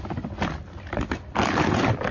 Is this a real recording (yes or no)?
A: yes